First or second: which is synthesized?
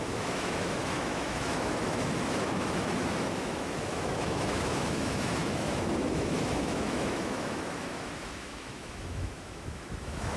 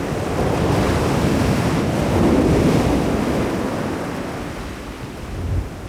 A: first